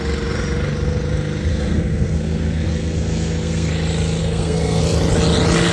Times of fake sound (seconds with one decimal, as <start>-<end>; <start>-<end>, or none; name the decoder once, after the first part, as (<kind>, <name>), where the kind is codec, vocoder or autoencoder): 1.5-3.7 (codec, SNAC); 4.2-4.8